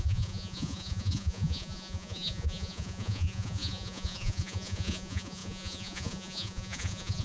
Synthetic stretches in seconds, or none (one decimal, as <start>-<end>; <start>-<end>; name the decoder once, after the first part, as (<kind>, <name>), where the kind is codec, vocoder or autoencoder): 0.0-7.2 (vocoder, Vocos)